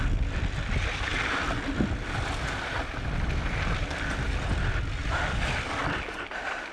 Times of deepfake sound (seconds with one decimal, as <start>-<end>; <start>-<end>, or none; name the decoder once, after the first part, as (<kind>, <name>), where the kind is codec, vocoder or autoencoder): none